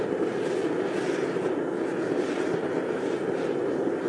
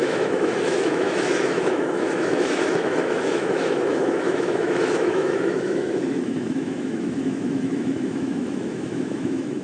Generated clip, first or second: second